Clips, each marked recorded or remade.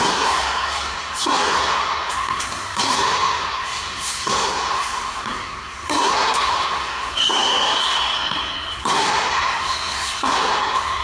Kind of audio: remade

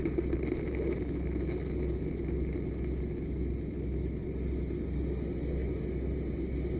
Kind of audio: recorded